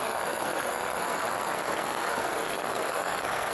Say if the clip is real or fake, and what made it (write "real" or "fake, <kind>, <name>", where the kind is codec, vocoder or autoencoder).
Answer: fake, codec, SNAC